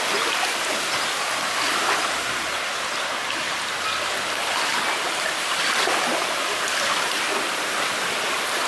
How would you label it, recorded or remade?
recorded